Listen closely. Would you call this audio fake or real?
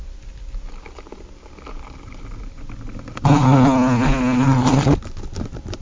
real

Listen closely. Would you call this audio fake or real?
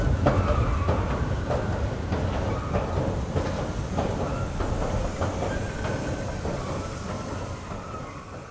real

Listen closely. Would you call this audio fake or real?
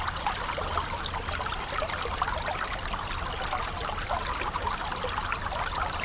real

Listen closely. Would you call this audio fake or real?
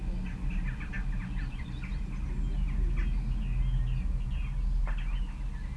real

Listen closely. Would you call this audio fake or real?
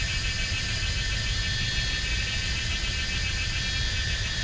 real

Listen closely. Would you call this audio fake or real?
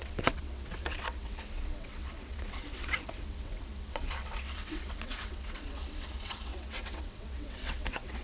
fake